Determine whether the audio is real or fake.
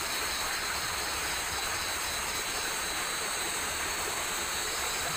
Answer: real